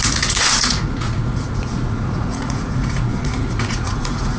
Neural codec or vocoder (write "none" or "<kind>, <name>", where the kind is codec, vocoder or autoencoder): vocoder, Vocos